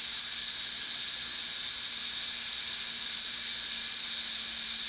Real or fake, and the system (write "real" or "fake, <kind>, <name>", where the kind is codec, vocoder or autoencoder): real